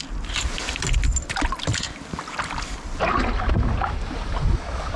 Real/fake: real